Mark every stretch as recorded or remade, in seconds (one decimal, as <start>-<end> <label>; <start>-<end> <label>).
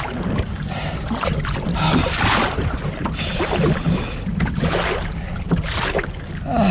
0.0-6.7 recorded